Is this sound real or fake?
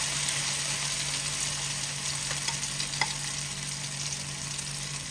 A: real